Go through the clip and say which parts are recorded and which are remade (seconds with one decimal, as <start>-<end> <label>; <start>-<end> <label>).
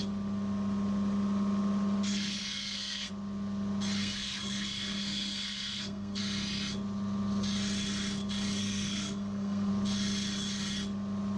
0.0-2.4 recorded; 2.4-3.1 remade; 3.1-4.0 recorded; 4.0-6.2 remade; 6.2-8.6 recorded; 8.6-9.7 remade; 9.7-11.4 recorded